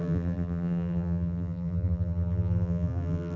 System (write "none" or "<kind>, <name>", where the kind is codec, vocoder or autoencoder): vocoder, BigVGAN v2